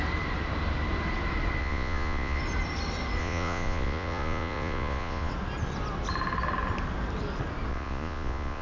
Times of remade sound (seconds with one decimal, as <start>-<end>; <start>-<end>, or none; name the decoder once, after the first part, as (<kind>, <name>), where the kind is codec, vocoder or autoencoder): 1.6-2.4 (vocoder, Vocos); 3.2-5.3; 7.7-8.6